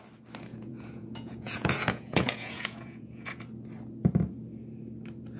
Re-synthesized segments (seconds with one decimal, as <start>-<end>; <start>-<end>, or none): 0.5-3.4